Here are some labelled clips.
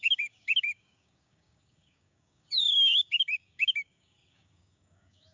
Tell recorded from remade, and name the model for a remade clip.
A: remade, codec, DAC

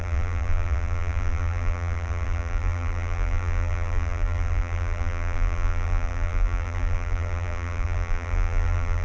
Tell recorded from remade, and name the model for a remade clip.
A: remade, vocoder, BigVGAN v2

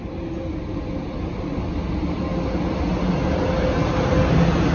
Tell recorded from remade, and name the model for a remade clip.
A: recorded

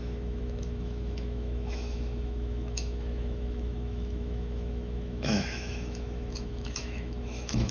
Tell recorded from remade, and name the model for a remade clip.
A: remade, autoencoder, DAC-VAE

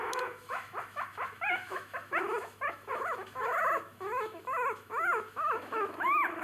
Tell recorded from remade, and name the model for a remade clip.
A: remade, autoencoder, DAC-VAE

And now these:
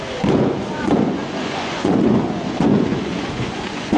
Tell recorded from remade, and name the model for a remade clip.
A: remade, vocoder, Vocos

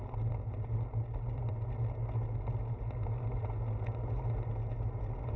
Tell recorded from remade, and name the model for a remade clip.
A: recorded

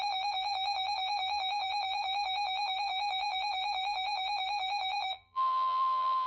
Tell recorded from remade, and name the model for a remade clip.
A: remade, vocoder, BigVGAN v2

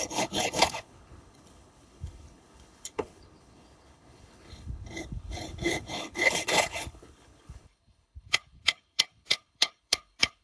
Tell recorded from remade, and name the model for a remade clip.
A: remade, codec, HILCodec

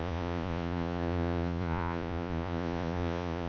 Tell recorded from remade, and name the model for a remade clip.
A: remade, vocoder, Vocos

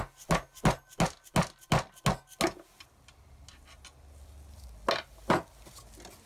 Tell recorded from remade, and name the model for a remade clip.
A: recorded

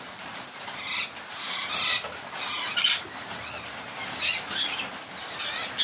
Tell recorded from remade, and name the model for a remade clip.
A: recorded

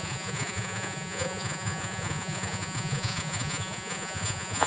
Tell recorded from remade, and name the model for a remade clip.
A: remade, vocoder, Vocos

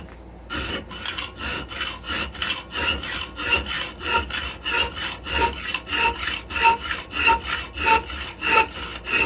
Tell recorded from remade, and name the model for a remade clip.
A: recorded